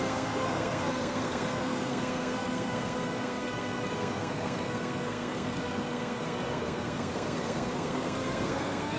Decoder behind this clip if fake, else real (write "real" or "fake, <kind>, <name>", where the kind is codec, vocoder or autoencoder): fake, codec, SNAC